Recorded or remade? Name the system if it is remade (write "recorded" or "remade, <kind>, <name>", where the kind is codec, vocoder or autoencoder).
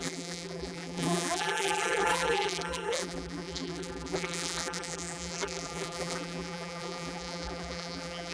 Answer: remade, vocoder, BigVGAN v2